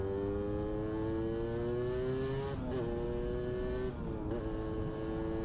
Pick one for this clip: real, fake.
real